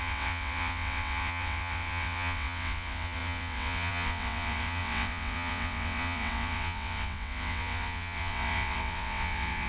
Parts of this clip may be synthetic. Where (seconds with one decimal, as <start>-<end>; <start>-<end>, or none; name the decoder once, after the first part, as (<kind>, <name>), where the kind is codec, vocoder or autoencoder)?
0.0-9.7 (vocoder, WaveNeXt)